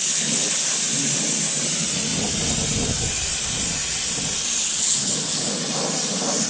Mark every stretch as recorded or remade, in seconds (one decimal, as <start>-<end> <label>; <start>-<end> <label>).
0.0-0.6 remade; 0.6-4.6 recorded; 4.6-5.5 remade; 5.5-6.5 recorded